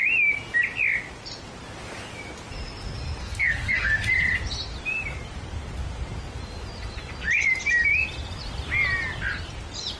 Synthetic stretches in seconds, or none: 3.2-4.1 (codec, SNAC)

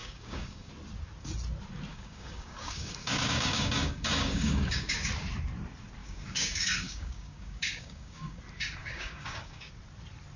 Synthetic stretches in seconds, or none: 0.0-0.7 (codec, DAC); 1.9-5.1; 6.0-8.4; 8.8-9.7

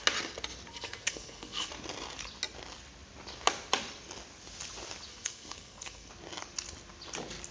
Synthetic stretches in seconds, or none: 0.7-1.7 (codec, SNAC); 5.1-6.1

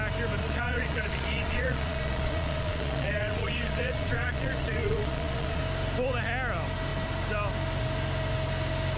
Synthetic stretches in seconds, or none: 0.4-5.6 (vocoder, Vocos)

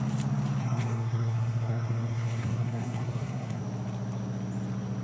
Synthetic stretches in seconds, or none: 0.6-3.6 (codec, SNAC)

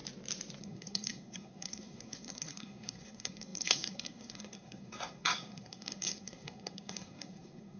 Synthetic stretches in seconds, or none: 0.6-7.8 (codec, SNAC)

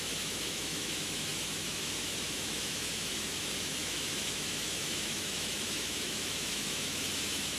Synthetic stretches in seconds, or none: 0.0-7.6 (autoencoder, DAC-VAE)

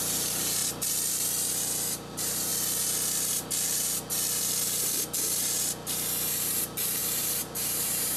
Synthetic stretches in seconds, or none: 0.0-0.6 (vocoder, BigVGAN v2); 1.9-2.5; 6.3-8.2